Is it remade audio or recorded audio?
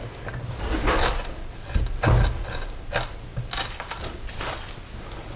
recorded